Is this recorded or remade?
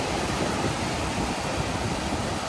remade